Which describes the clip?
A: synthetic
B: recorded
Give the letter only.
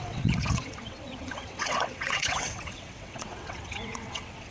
A